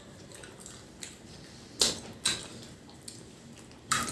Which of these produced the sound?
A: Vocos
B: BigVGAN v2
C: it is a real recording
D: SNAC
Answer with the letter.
C